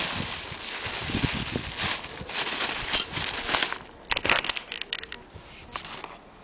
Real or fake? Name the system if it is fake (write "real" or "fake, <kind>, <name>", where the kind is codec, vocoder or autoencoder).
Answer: real